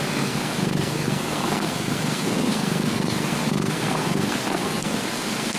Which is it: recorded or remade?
remade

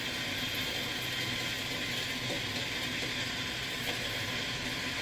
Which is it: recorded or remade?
recorded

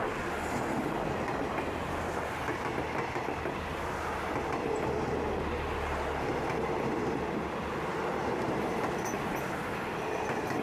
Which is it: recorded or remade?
recorded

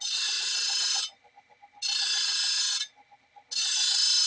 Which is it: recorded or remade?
recorded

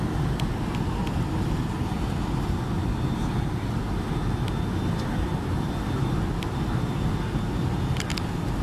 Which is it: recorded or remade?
recorded